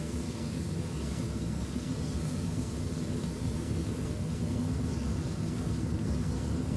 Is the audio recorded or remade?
remade